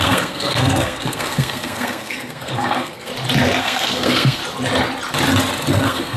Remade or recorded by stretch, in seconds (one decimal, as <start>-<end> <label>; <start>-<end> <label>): 0.0-3.1 remade; 3.1-3.6 recorded; 3.6-4.4 remade; 4.4-5.7 recorded; 5.7-6.2 remade